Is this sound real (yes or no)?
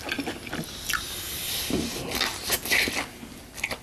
yes